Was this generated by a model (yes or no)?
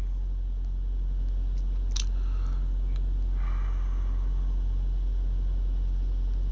no